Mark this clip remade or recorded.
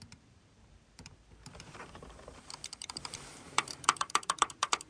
remade